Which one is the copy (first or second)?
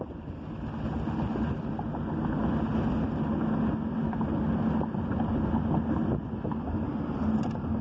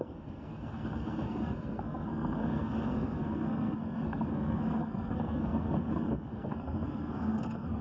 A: second